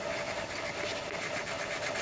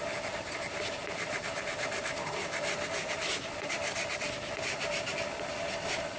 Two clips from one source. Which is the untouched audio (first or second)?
first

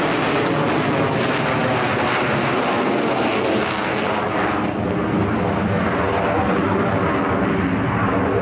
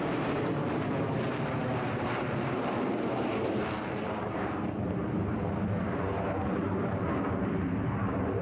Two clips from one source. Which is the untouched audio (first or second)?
first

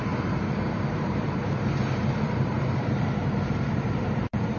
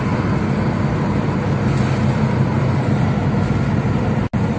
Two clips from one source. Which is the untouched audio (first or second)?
second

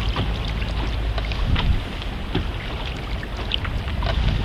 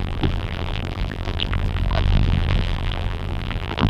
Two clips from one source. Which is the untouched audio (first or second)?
first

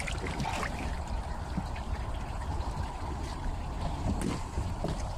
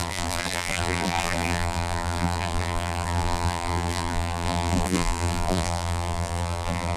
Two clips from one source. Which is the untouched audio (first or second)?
first